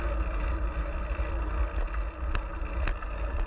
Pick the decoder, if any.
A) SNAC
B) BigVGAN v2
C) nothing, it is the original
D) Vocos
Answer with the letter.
C